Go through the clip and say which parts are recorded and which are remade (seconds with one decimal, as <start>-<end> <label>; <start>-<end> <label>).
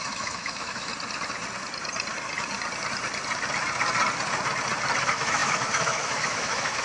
0.0-0.9 remade; 0.9-5.0 recorded; 5.0-6.8 remade